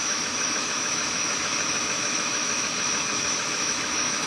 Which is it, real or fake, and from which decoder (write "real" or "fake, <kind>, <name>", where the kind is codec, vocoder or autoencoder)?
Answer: fake, autoencoder, DAC-VAE